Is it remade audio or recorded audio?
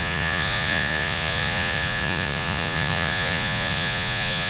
remade